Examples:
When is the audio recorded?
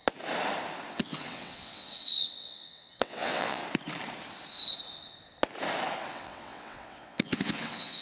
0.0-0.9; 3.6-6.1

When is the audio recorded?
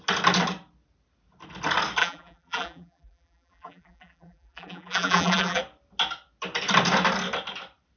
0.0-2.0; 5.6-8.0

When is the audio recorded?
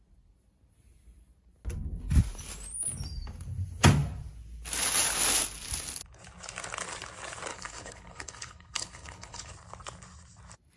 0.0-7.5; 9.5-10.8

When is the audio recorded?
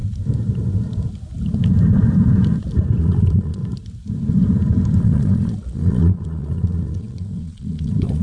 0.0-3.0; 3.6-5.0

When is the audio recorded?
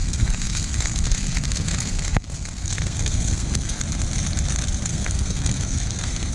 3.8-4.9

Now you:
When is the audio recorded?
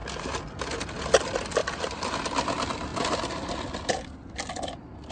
0.0-5.1